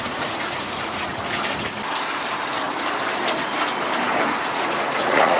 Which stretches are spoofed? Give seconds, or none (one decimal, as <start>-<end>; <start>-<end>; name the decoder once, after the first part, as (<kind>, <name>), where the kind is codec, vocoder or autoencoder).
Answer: 0.0-1.2 (vocoder, Vocos); 4.4-5.4